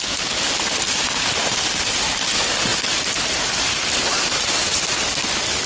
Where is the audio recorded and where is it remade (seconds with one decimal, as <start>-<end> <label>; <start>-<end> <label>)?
0.0-5.7 recorded